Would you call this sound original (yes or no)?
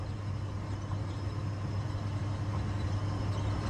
yes